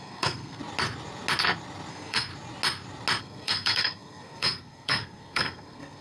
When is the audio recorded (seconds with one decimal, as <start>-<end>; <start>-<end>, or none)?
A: 0.6-1.9; 2.3-3.2